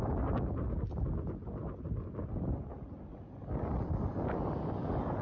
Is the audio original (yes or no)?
yes